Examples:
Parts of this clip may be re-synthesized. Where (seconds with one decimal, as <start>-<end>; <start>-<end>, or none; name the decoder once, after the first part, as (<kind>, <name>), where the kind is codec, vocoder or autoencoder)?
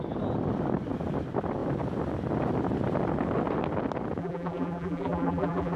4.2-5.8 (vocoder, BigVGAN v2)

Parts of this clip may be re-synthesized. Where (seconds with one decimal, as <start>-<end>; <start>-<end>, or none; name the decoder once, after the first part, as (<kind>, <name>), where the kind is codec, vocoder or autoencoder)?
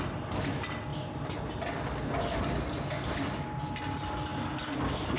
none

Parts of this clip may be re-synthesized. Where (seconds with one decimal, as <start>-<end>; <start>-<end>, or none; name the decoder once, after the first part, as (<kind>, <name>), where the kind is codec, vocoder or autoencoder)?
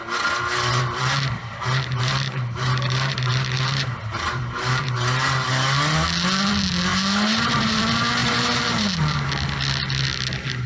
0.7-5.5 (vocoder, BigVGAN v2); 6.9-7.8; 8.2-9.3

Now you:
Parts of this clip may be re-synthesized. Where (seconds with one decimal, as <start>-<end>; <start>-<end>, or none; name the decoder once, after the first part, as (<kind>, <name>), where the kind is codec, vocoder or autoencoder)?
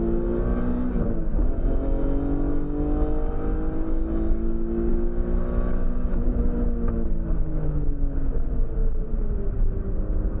4.9-8.4 (autoencoder, DAC-VAE)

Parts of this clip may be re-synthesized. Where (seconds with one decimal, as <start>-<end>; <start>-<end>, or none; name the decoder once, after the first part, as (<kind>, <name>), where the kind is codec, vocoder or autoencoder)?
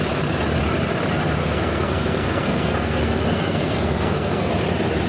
1.4-4.5 (codec, SNAC)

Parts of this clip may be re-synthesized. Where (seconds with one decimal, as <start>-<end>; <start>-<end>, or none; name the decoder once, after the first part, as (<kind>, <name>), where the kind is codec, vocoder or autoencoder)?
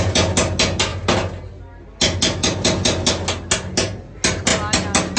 none